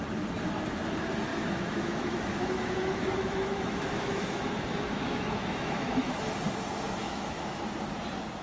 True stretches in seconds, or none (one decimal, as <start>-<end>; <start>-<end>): 0.0-1.3; 6.2-7.0; 7.6-8.4